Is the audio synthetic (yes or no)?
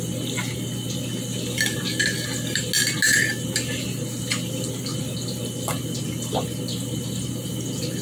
no